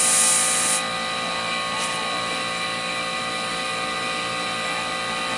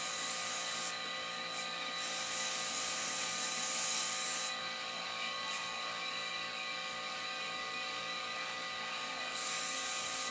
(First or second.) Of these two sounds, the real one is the first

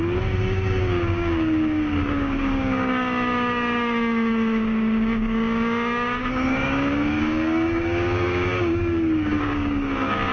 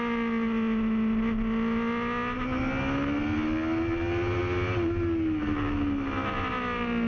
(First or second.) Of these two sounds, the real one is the second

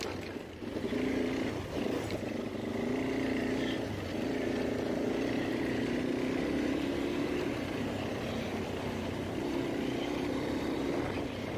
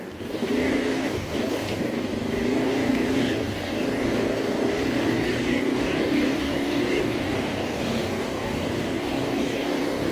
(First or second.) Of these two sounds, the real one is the first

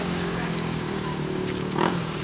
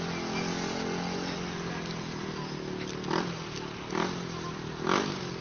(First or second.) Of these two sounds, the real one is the second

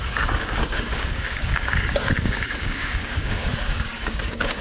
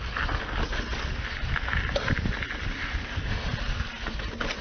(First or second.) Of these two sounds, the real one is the second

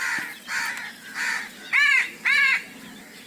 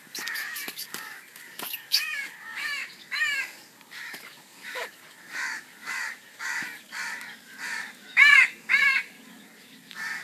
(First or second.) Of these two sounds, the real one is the first